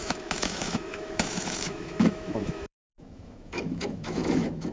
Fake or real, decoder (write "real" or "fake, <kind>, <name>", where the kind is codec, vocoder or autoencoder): fake, autoencoder, DAC-VAE